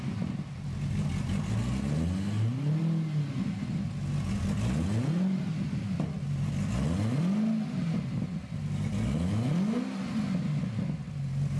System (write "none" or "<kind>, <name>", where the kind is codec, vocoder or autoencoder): none